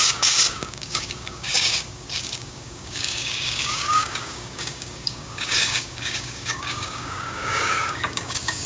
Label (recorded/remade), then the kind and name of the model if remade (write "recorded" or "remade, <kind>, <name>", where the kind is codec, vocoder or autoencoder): remade, codec, DAC